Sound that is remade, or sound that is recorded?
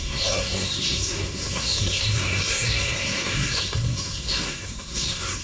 remade